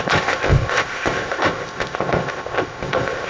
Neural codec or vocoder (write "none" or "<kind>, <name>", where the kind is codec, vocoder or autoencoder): codec, ZipCodec